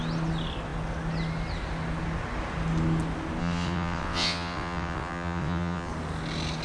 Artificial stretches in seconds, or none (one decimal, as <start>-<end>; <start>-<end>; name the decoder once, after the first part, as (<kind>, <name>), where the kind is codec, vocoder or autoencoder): 3.4-5.9 (vocoder, WaveNeXt)